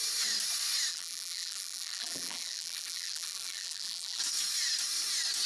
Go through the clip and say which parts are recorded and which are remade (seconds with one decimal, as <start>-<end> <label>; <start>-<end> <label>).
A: 0.0-0.9 recorded; 0.9-4.2 remade; 4.2-5.5 recorded